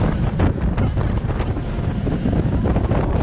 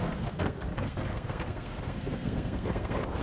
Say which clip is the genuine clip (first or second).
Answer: first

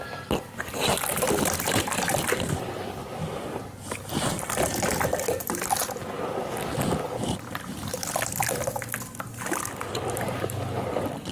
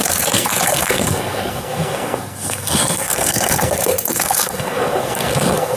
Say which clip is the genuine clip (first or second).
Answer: first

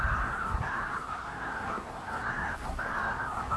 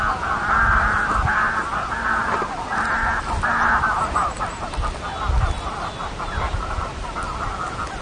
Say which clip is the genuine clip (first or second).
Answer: second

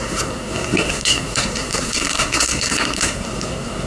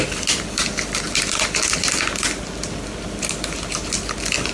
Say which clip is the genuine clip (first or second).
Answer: second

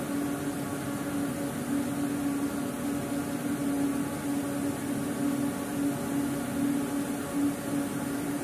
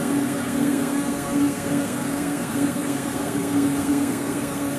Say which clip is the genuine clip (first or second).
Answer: first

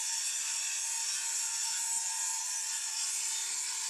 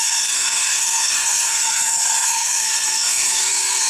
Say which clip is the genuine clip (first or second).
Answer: first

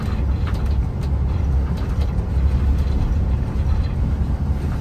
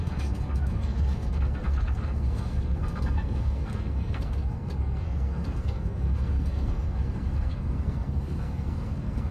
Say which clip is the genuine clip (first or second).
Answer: first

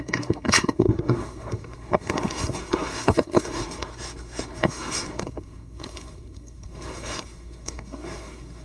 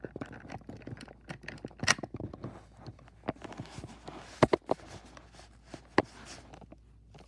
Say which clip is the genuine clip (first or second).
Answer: second